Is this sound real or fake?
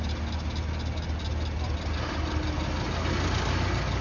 real